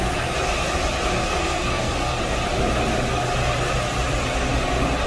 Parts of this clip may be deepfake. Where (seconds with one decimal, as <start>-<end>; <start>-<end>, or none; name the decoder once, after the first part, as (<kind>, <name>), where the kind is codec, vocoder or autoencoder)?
1.2-2.2 (codec, SNAC)